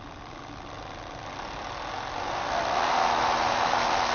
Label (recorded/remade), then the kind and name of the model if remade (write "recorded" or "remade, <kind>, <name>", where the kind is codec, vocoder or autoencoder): recorded